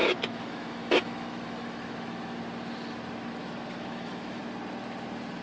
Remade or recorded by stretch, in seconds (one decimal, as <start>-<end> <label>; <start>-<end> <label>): 0.0-2.4 remade; 2.4-3.4 recorded; 3.4-4.4 remade; 4.4-5.4 recorded